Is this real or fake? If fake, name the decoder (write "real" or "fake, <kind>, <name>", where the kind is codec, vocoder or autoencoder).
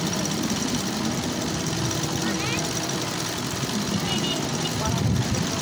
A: real